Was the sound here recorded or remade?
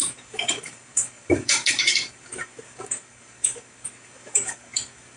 remade